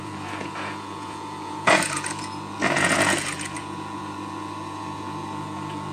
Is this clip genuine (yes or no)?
no